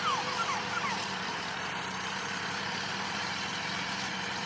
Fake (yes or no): yes